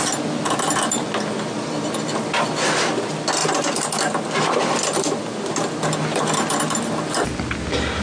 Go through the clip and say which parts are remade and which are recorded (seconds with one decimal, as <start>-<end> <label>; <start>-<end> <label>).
0.0-8.0 recorded